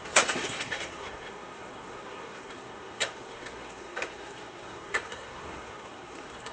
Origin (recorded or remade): remade